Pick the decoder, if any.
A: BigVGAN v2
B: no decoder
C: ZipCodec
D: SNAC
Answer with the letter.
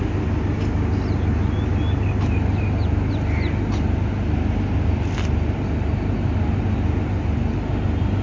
B